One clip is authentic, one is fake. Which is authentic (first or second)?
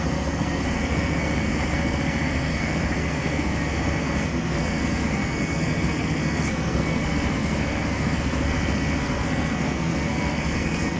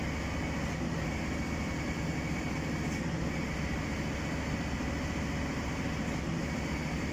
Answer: second